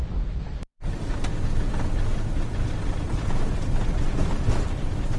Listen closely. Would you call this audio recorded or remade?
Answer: recorded